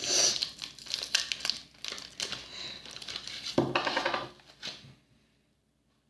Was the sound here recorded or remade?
recorded